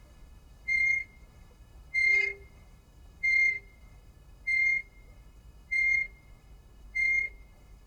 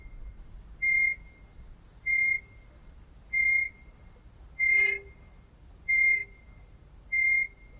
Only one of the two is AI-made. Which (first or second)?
first